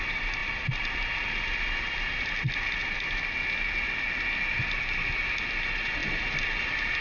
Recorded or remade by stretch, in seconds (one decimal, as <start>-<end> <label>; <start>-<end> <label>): 0.0-0.4 recorded; 0.4-2.4 remade; 2.4-7.0 recorded